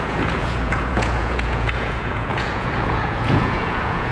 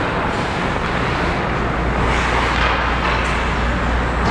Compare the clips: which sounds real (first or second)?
second